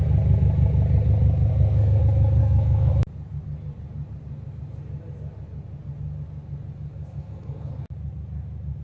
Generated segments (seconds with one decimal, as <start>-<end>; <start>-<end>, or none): 1.5-2.0; 2.4-2.9; 7.0-7.7

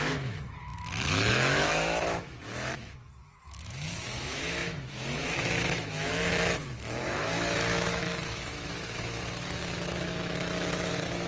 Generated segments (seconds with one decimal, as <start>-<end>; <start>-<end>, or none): 0.0-11.3

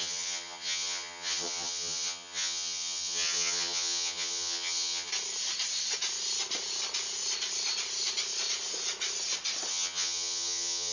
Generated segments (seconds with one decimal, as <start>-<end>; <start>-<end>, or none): 0.0-5.1; 9.7-10.9

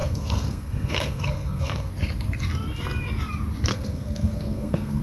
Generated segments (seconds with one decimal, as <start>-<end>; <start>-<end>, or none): 0.0-1.9; 3.7-5.0

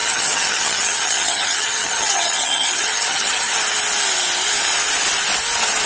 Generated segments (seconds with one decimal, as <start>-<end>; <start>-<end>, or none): 0.0-3.5

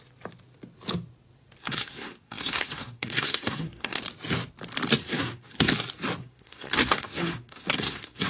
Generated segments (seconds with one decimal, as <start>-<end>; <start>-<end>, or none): 1.6-4.0; 4.9-5.7; 6.2-8.3